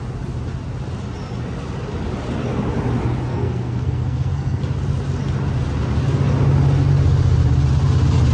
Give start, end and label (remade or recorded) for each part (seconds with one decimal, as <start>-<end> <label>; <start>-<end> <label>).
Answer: 0.0-3.3 recorded; 3.3-4.6 remade; 4.6-8.3 recorded